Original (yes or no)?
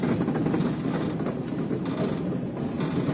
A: yes